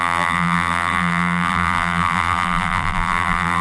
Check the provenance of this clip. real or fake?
fake